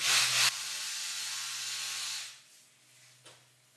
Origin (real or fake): real